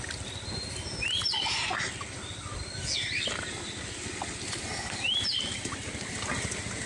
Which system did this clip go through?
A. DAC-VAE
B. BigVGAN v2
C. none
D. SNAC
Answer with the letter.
C